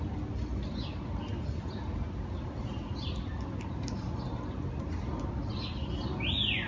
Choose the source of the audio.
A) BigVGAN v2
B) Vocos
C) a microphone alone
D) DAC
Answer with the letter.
C